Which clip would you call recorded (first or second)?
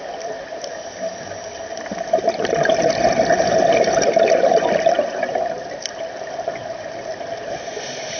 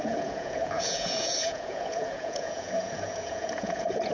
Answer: first